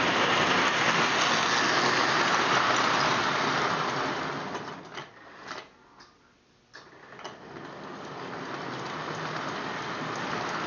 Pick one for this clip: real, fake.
real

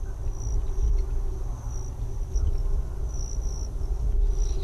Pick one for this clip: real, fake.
real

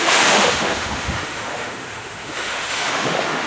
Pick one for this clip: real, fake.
fake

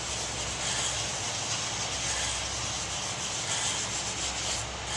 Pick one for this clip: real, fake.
real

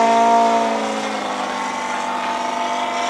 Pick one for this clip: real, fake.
real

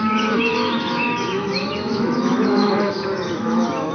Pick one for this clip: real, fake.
fake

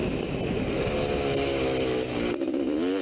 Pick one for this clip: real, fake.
real